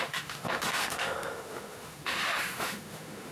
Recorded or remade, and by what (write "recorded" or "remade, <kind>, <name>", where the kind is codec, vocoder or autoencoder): remade, autoencoder, DAC-VAE